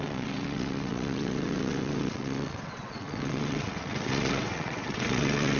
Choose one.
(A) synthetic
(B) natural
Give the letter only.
A